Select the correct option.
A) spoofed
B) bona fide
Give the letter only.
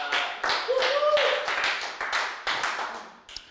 B